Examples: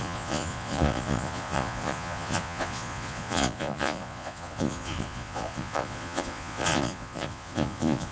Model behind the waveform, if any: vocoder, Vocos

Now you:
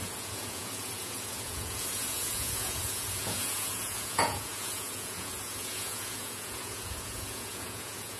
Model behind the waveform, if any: vocoder, Vocos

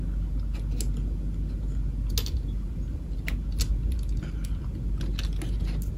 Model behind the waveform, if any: none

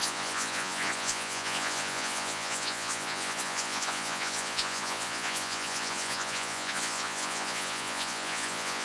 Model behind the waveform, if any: vocoder, Vocos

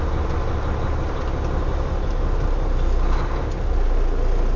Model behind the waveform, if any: none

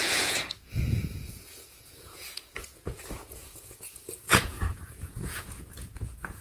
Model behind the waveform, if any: vocoder, Vocos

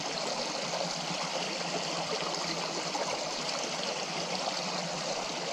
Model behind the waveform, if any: none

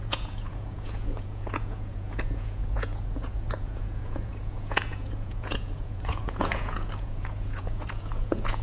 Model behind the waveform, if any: vocoder, Vocos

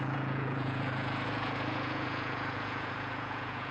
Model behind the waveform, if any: vocoder, Vocos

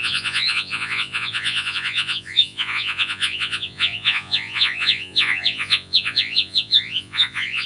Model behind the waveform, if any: vocoder, Vocos